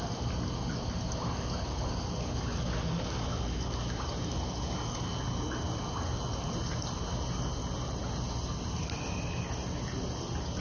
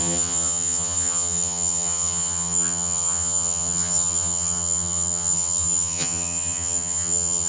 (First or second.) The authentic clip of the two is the first